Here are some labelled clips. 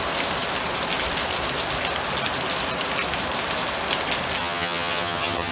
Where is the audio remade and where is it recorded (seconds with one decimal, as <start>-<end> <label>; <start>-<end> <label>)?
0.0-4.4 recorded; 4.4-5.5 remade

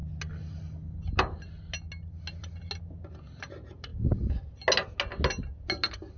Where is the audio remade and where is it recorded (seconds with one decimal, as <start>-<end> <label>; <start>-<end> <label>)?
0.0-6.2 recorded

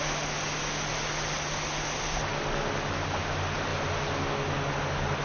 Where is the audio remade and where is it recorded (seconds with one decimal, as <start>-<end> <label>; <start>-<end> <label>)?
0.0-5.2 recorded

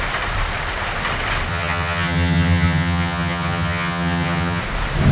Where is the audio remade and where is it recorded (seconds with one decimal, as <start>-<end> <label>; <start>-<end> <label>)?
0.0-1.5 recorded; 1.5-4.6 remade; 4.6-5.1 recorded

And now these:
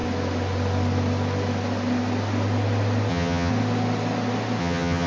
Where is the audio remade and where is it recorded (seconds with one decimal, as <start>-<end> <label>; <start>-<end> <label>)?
0.0-3.1 recorded; 3.1-3.5 remade; 3.5-4.6 recorded; 4.6-5.1 remade

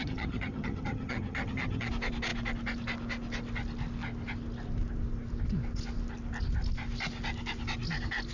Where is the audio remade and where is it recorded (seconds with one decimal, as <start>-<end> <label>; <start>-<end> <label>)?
0.0-1.9 remade; 1.9-8.3 recorded